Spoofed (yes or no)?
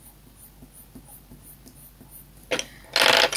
no